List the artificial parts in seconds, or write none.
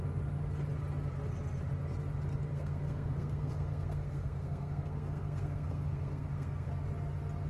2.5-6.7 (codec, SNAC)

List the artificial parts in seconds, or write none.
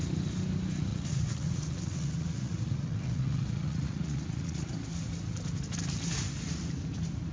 0.9-4.7 (vocoder, Vocos)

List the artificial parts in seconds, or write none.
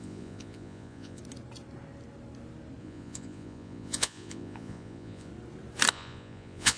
0.0-1.2 (vocoder, Vocos); 2.8-5.3; 5.9-6.8